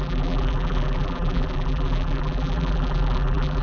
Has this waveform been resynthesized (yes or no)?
yes